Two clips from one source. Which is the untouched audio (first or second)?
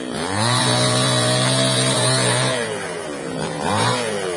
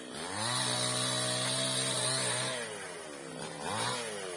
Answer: second